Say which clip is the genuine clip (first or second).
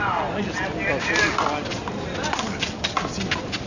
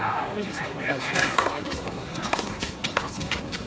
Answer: first